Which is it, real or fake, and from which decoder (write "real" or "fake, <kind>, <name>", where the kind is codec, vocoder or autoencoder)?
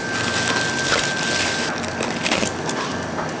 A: real